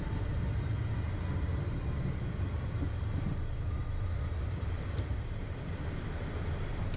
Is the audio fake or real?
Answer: fake